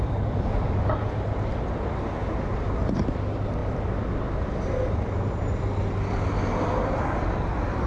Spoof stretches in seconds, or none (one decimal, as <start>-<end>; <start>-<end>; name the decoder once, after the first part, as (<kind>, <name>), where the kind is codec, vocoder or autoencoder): none